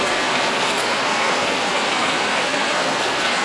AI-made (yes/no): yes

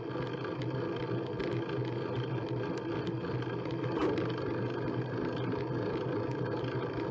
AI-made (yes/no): no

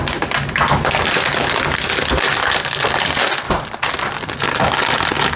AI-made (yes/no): no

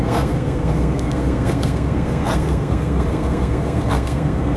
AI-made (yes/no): yes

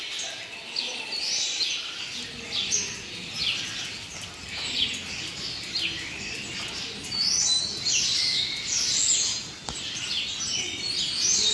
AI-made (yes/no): no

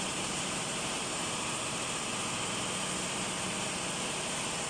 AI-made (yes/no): no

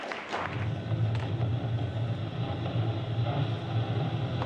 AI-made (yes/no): no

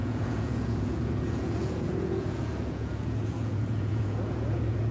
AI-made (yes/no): yes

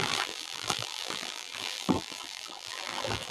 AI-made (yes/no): yes